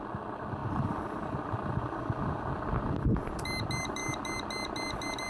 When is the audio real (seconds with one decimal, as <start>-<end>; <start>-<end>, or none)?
0.0-5.3